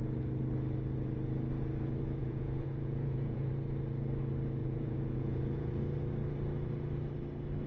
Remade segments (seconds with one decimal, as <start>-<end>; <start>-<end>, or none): 2.2-3.5; 4.6-5.8